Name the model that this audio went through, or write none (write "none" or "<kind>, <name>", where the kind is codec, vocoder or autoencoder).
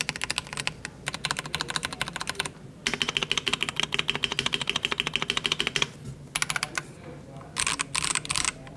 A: none